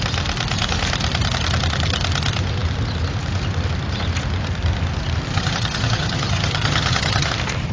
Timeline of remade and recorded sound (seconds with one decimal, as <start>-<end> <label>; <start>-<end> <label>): 0.0-5.3 recorded; 5.3-7.3 remade; 7.3-7.7 recorded